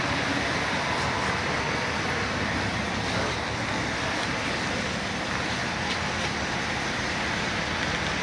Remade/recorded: recorded